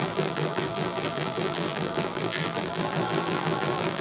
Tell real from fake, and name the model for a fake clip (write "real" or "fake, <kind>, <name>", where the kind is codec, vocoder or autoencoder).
fake, vocoder, BigVGAN v2